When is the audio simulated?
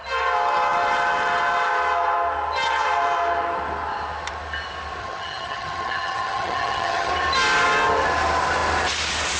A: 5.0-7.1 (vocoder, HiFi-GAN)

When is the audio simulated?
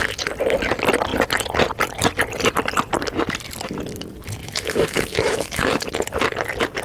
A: 4.4-5.9 (autoencoder, DAC-VAE)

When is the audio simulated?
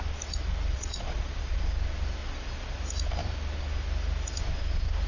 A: 0.7-1.5 (vocoder, Vocos); 2.2-2.8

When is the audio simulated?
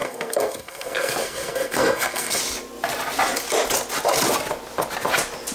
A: 0.0-2.4 (codec, SNAC)